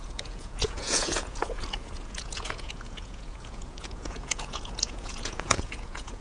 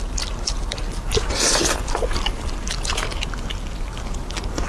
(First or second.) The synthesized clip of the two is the first